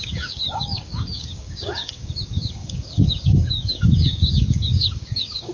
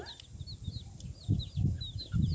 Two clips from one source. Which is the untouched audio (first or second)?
second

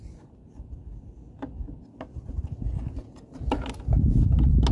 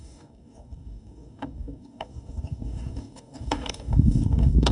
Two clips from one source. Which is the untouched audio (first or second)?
first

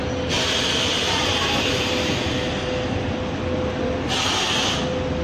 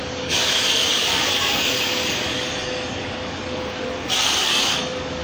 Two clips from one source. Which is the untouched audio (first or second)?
first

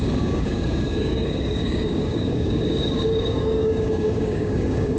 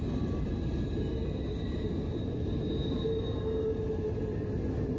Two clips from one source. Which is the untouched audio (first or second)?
second